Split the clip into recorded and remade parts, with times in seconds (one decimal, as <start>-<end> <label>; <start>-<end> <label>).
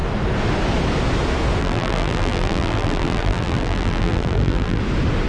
0.0-1.6 recorded; 1.6-4.8 remade; 4.8-5.3 recorded